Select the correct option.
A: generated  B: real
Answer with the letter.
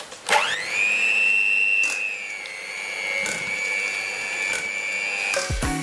B